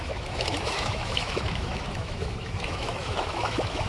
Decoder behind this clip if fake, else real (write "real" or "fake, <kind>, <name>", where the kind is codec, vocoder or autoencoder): fake, autoencoder, DAC-VAE